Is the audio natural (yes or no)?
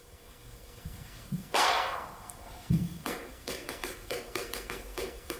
no